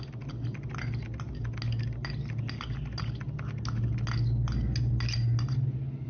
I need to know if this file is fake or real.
real